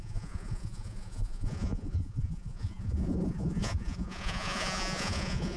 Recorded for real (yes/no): no